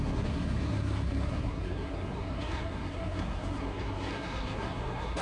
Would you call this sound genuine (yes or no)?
no